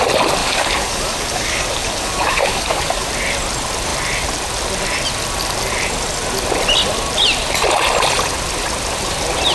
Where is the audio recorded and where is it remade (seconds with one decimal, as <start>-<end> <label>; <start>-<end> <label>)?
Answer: 0.0-0.4 recorded; 0.4-3.1 remade; 3.1-9.5 recorded